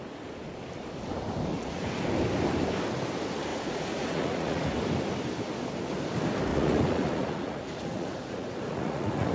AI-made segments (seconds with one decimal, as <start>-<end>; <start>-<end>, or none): 1.5-2.0; 3.5-4.7; 6.5-9.3